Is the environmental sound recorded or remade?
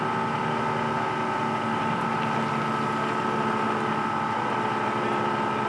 recorded